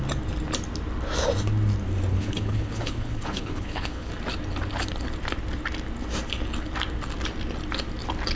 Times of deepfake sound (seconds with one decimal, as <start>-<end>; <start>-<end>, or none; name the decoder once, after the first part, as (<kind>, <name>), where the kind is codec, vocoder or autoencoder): 2.1-4.1 (codec, HILCodec)